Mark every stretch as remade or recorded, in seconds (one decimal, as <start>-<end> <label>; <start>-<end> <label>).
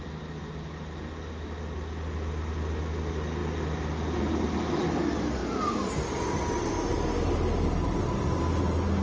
0.0-9.0 recorded